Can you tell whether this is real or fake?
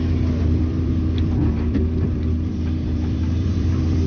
fake